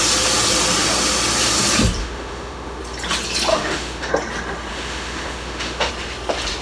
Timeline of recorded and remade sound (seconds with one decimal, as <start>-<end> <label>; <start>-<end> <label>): 0.0-2.0 recorded; 2.0-2.8 remade; 2.8-3.5 recorded; 3.5-4.1 remade; 4.1-4.7 recorded; 4.7-5.9 remade; 5.9-6.6 recorded